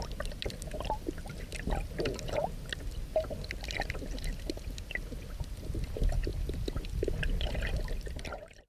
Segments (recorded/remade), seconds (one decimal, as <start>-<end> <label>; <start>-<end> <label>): 0.0-8.7 recorded